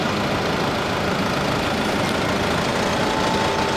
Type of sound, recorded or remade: recorded